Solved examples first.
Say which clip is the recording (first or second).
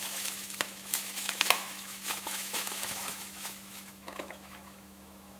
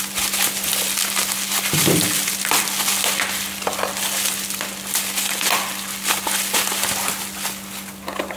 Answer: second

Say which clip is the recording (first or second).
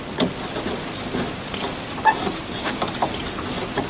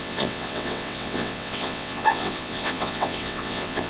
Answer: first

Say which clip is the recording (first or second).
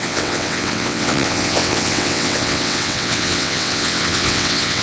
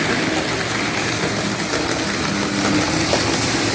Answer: second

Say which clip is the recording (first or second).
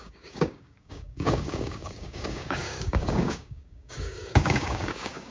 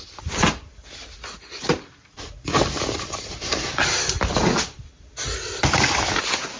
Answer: second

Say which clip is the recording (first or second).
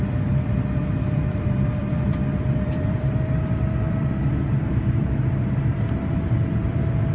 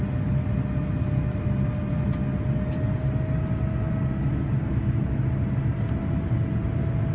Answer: second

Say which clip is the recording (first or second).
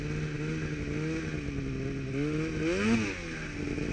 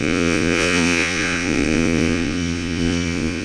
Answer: first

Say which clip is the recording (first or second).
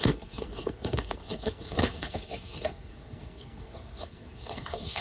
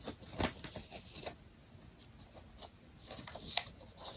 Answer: second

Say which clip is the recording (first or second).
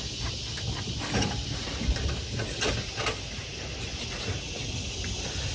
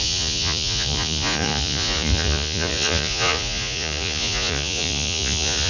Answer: first